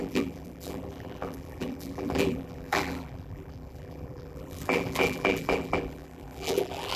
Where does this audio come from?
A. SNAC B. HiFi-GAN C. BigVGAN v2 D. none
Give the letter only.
C